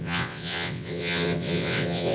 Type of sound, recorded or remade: remade